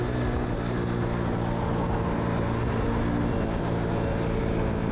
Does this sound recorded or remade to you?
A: recorded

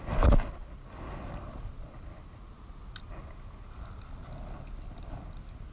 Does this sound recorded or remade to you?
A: recorded